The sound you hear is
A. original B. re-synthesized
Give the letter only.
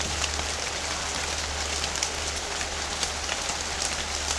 A